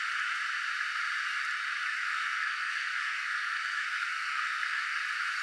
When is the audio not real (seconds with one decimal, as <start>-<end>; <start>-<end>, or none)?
1.8-5.0